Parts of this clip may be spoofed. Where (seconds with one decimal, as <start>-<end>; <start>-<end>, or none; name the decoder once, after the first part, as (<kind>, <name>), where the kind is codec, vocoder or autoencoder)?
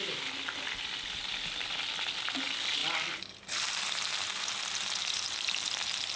none